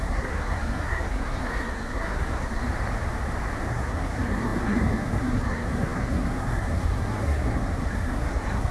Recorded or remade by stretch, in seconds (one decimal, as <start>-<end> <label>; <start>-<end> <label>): 0.0-2.6 remade; 2.6-3.7 recorded; 3.7-8.7 remade